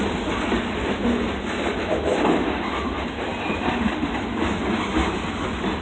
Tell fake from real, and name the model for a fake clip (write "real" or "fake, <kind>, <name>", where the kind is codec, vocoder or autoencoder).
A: real